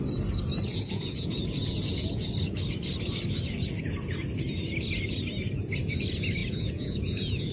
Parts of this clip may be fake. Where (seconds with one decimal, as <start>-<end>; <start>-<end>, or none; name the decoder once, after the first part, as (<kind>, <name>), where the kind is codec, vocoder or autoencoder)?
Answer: 0.7-2.3 (vocoder, Vocos); 6.4-7.5